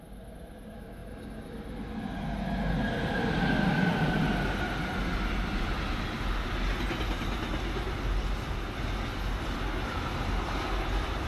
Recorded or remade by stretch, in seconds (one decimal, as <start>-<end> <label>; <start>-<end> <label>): 0.0-11.3 recorded